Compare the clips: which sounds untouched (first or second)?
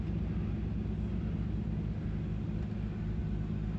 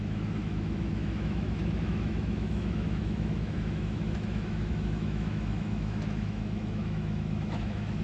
first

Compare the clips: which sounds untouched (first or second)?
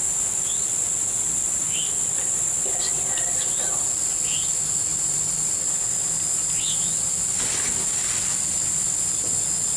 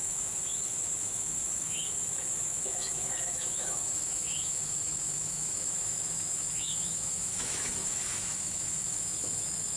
first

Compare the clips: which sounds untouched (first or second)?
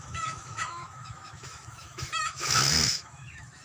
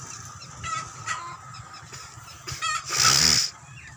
second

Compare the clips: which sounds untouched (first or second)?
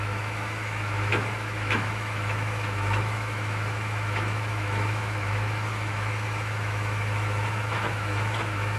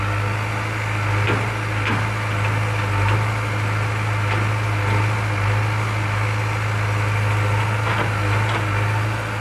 second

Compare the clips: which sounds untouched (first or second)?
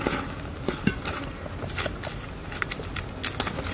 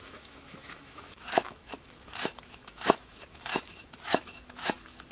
first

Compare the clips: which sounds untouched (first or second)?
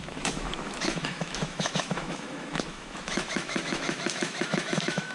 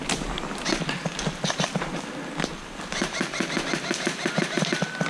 second